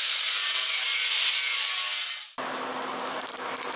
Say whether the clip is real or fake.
real